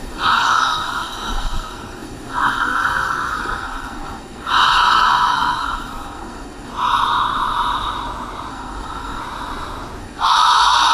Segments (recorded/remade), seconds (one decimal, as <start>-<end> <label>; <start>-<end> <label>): 0.0-6.7 remade; 6.7-8.5 recorded; 8.5-9.2 remade; 9.2-10.0 recorded; 10.0-10.9 remade